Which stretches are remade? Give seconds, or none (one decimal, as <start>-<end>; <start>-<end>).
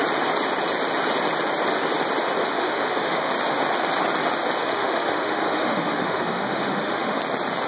2.4-3.3; 4.6-7.2